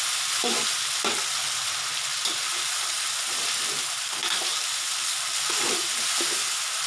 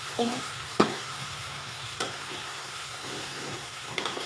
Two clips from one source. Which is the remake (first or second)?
second